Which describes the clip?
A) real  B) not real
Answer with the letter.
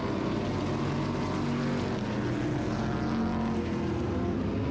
A